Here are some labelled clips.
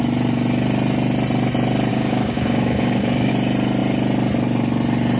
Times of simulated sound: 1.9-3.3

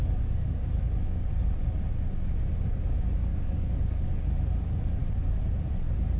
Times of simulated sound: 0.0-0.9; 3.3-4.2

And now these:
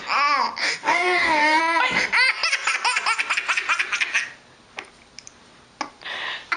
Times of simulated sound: 0.6-1.6

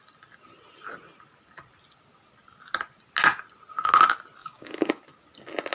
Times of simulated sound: 4.4-5.0

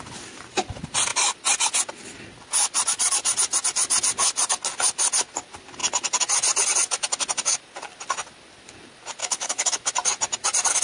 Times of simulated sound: 9.2-9.8